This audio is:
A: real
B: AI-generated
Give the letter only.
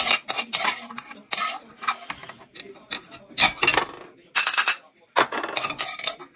A